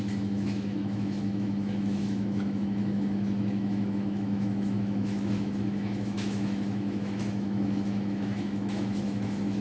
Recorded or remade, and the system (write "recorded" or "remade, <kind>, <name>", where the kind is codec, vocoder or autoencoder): remade, autoencoder, DAC-VAE